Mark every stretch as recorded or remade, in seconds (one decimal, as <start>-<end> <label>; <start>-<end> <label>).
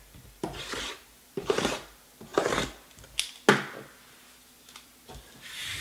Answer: 0.0-0.4 remade; 0.4-1.2 recorded; 1.2-2.3 remade; 2.3-5.8 recorded